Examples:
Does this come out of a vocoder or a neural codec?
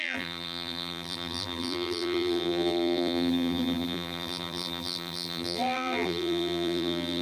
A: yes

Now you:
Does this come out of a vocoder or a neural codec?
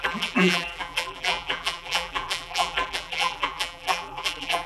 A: yes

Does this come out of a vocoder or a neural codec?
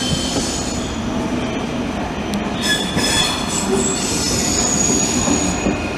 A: no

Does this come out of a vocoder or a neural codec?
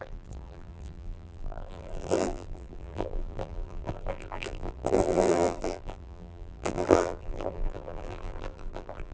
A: yes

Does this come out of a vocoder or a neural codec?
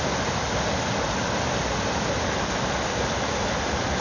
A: yes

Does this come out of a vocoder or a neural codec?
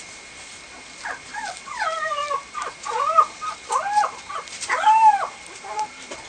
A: yes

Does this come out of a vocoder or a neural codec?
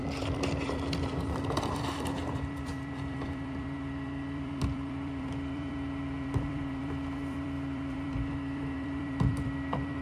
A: yes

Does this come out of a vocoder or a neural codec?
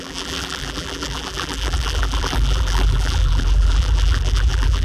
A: yes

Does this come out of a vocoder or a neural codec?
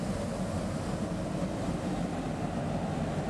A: no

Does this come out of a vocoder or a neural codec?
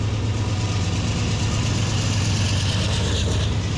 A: no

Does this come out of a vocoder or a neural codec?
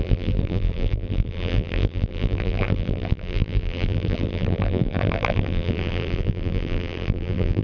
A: yes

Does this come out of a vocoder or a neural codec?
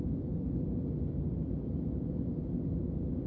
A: no